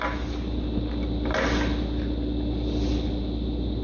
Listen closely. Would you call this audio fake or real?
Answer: real